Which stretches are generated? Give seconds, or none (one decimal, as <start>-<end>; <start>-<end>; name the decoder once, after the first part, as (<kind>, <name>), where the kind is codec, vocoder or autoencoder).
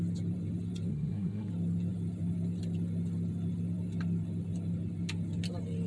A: 0.9-1.5 (codec, SNAC)